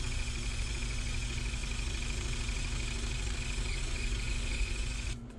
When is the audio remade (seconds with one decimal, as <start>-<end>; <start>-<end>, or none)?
0.0-1.6; 3.8-5.4